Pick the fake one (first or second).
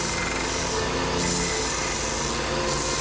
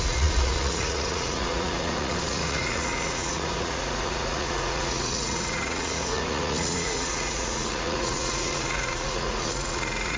second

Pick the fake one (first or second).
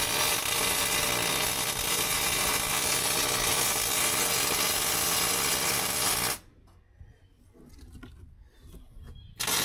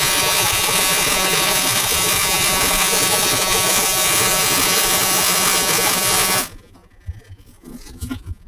second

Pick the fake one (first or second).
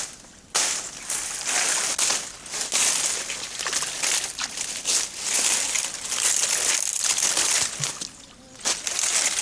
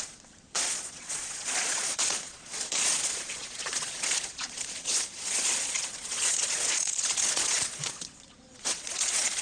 second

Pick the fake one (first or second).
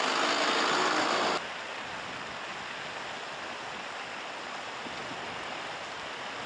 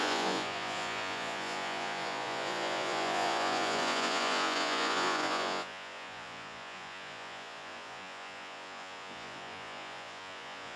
second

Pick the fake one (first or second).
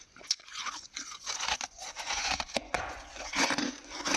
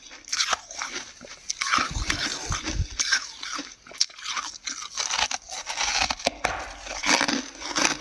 first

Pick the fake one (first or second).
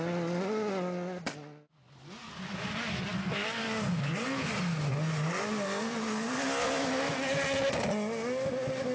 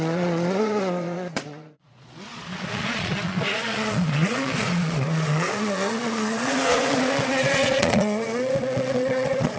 second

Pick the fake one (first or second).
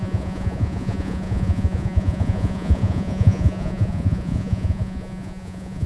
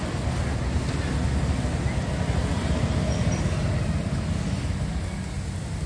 first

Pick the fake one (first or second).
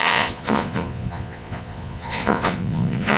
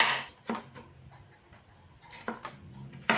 first